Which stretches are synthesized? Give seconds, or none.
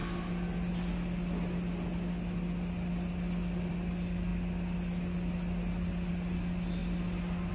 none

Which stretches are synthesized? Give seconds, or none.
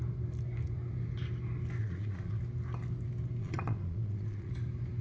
1.8-2.4 (vocoder, Vocos); 3.4-4.5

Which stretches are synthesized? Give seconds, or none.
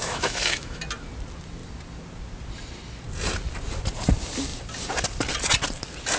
0.0-0.8 (autoencoder, DAC-VAE)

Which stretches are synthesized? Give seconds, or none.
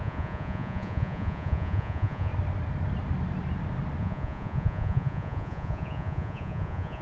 0.0-2.3 (vocoder, Vocos); 4.0-7.0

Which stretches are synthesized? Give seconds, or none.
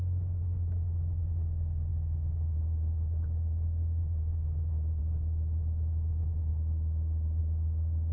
none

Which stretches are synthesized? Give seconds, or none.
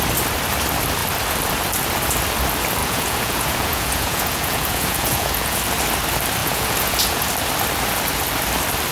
2.8-5.6 (vocoder, Vocos); 6.4-7.3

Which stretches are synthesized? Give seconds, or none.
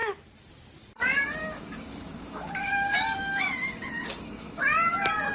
1.4-4.6 (codec, DAC)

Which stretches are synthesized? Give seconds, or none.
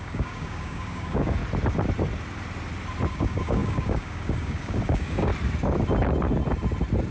0.0-1.4 (codec, DAC); 3.1-5.3